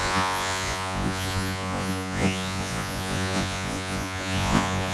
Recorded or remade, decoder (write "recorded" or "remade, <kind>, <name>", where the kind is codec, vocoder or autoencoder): remade, vocoder, Vocos